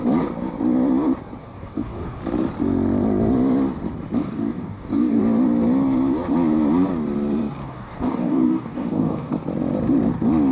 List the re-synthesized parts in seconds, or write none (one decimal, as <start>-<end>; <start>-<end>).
1.4-2.2; 4.2-5.2; 7.6-9.3